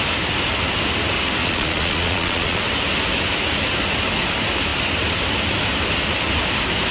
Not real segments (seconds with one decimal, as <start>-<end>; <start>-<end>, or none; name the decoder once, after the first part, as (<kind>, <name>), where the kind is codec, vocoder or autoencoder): 1.4-2.6 (vocoder, Vocos)